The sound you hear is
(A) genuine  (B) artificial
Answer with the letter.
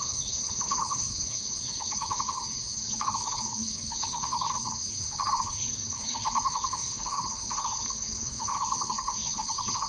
B